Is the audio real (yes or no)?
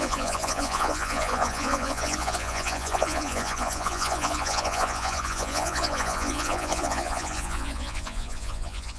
no